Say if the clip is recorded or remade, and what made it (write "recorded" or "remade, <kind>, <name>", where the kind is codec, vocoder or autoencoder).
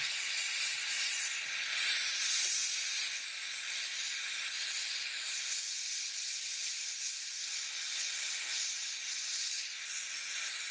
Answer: recorded